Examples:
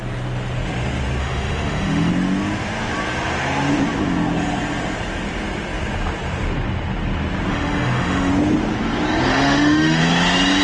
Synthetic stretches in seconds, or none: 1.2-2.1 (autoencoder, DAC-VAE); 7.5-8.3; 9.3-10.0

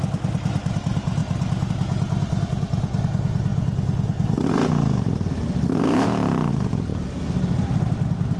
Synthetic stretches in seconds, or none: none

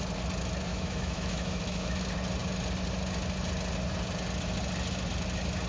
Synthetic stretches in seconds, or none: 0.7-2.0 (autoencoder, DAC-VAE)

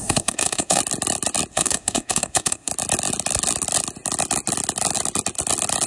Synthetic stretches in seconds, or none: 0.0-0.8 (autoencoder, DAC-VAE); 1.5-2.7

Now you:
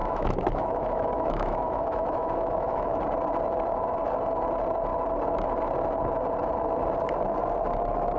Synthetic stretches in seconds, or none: 0.0-3.0 (autoencoder, DAC-VAE)